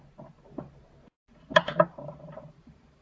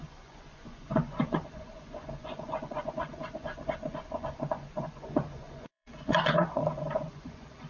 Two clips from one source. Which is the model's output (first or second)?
second